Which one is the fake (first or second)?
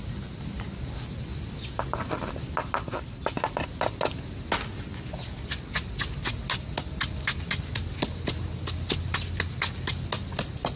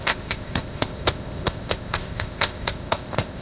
second